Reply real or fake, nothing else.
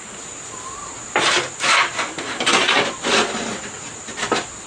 real